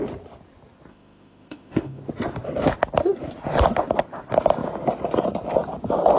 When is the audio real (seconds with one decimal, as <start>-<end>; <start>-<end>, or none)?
0.0-0.9; 2.0-6.2